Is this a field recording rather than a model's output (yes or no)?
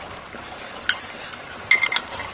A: yes